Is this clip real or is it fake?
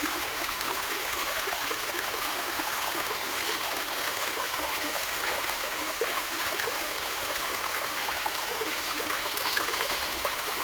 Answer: fake